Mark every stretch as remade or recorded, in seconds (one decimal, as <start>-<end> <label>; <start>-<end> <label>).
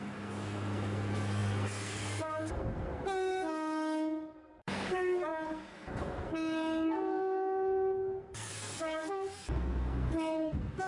0.0-10.9 remade